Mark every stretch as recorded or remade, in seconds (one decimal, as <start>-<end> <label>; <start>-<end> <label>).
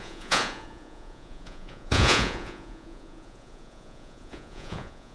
0.0-5.1 remade